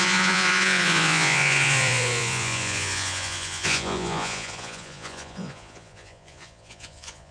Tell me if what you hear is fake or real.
fake